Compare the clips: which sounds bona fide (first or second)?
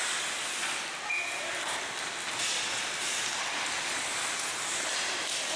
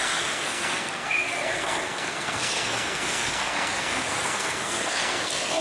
first